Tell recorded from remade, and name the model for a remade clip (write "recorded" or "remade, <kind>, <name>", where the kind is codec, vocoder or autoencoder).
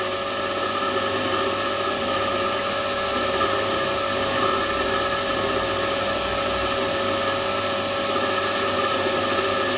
recorded